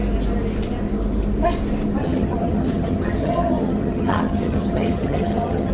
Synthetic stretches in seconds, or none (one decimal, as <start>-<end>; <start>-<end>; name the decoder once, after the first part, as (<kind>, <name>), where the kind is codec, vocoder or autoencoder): 2.0-5.7 (vocoder, HiFi-GAN)